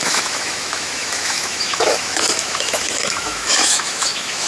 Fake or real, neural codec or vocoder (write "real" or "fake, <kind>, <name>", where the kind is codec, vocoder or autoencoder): fake, autoencoder, DAC-VAE